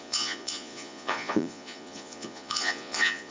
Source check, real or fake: fake